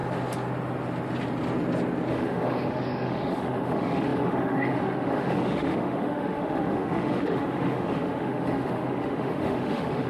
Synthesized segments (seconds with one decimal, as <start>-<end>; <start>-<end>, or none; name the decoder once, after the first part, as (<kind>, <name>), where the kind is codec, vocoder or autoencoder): 2.1-10.1 (autoencoder, DAC-VAE)